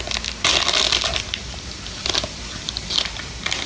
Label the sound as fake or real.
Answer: real